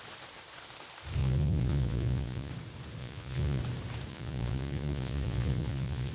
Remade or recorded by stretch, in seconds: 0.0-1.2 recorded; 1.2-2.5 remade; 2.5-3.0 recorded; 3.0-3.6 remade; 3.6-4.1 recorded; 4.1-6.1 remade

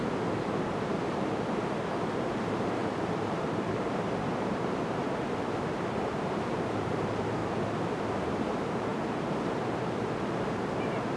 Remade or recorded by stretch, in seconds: 0.0-7.4 remade; 7.4-8.5 recorded; 8.5-11.2 remade